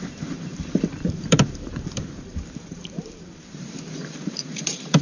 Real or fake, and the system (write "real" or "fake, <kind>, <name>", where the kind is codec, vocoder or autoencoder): fake, vocoder, BigVGAN v2